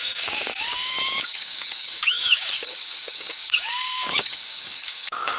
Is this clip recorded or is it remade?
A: remade